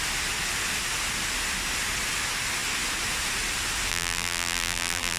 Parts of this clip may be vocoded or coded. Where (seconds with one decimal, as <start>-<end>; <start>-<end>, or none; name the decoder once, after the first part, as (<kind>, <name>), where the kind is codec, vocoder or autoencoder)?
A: 3.9-5.2 (vocoder, BigVGAN v2)